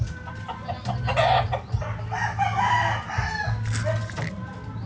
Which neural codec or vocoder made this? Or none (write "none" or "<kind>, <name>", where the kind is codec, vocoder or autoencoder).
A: none